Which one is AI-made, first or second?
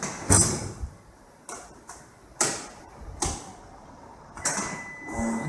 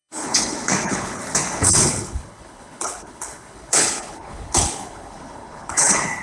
second